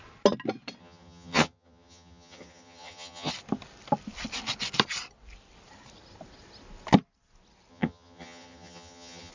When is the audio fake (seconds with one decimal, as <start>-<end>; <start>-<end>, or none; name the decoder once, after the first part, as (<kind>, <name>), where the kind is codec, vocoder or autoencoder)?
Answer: 0.8-3.3 (vocoder, HiFi-GAN); 7.7-9.3